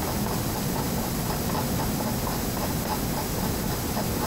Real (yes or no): yes